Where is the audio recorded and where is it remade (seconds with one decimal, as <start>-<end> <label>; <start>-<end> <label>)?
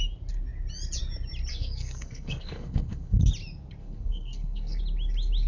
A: 0.0-1.5 recorded; 1.5-3.3 remade; 3.3-3.8 recorded; 3.8-4.8 remade; 4.8-5.5 recorded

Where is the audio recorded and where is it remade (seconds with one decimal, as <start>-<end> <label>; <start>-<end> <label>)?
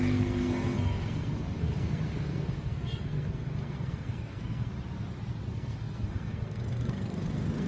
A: 0.0-4.7 remade; 4.7-5.5 recorded; 5.5-7.7 remade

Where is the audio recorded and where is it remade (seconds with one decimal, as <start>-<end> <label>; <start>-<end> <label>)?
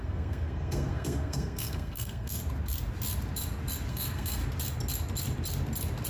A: 0.0-2.4 remade; 2.4-3.9 recorded; 3.9-4.4 remade; 4.4-6.1 recorded